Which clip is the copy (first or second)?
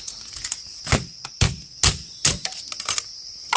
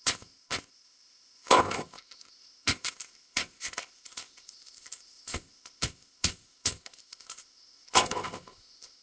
second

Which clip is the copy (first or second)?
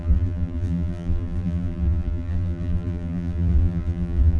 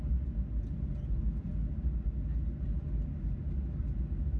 first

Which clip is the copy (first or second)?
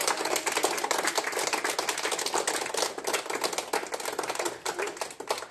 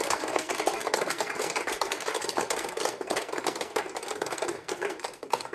second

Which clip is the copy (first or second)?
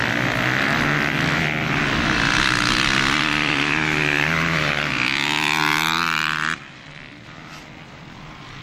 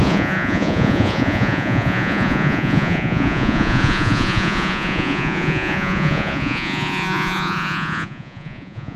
second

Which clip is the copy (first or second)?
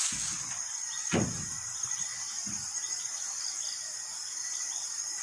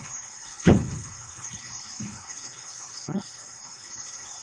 second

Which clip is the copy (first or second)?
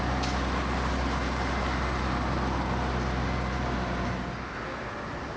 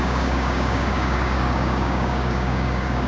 second